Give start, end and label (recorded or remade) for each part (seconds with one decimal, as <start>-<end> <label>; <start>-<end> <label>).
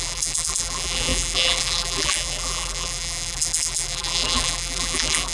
0.0-5.3 remade